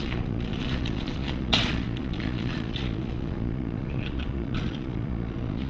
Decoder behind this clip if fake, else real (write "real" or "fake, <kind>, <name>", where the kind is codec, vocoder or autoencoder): fake, vocoder, Vocos